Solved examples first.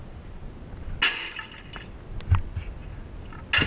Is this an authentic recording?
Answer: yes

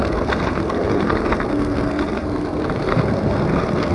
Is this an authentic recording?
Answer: no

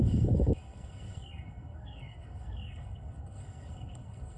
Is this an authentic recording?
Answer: no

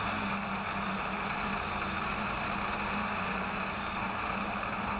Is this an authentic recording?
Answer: yes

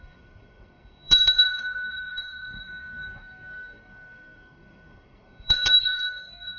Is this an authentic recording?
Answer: no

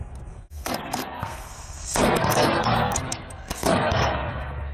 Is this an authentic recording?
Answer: no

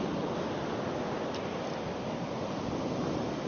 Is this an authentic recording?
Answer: yes